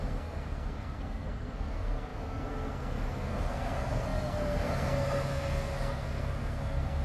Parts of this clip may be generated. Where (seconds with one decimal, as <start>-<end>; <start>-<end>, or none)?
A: 0.0-7.0